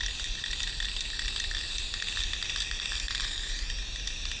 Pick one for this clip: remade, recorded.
recorded